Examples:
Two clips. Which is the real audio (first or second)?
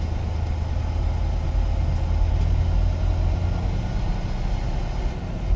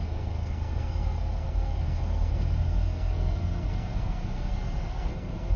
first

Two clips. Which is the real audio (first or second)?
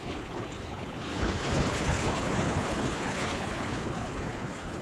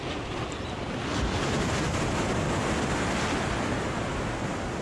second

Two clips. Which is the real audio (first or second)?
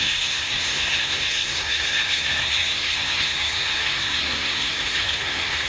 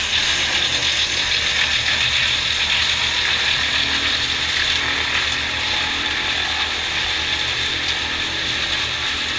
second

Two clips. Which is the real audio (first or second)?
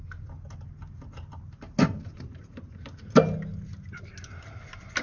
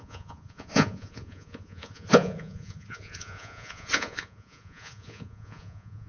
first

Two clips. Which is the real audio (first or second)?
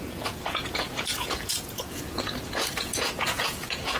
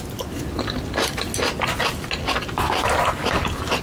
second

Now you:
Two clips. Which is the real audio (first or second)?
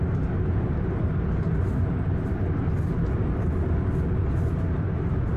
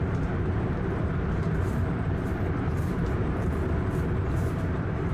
first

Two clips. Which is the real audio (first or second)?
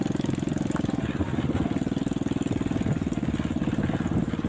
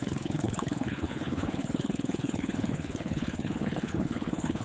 first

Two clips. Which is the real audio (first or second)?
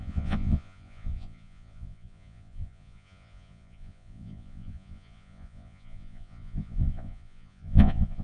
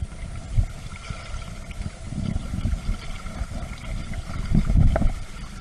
second